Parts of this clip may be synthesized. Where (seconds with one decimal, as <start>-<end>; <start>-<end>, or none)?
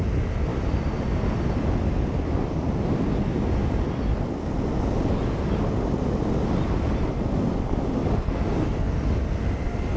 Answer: none